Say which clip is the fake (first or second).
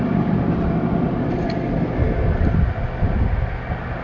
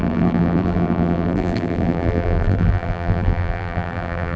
second